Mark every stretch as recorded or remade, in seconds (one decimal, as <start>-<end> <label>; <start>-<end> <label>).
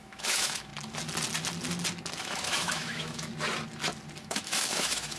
0.0-0.7 remade; 0.7-2.2 recorded; 2.2-3.3 remade; 3.3-4.2 recorded; 4.2-5.2 remade